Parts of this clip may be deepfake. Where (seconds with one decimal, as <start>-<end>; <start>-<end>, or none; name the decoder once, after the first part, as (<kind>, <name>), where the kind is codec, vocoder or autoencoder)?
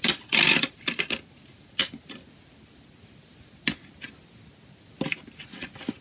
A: none